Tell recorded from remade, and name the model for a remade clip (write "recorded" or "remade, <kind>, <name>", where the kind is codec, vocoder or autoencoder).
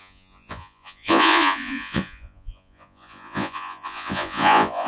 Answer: remade, vocoder, Vocos